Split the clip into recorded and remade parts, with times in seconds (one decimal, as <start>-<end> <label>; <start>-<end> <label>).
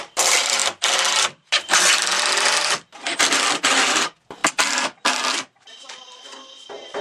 0.0-7.0 recorded